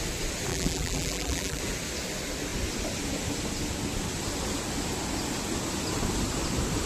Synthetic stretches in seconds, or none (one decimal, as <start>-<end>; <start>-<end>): 0.5-1.6